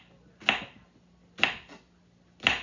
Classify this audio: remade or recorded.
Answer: recorded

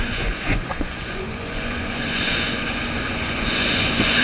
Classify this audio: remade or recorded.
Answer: remade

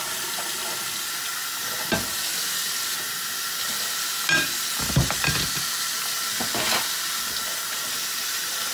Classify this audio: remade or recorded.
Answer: recorded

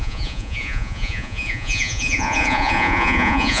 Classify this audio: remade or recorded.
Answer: remade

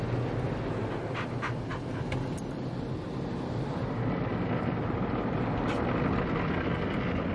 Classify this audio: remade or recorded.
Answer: recorded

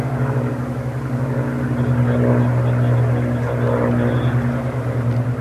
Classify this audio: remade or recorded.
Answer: recorded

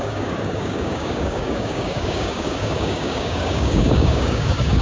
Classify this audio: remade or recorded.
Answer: remade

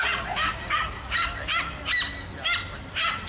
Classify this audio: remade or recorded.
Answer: recorded